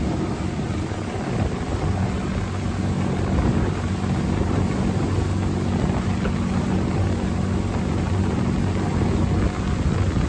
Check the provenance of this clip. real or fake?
real